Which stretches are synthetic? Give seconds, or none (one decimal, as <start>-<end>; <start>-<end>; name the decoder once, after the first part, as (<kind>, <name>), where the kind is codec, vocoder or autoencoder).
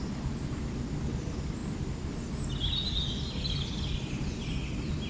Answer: none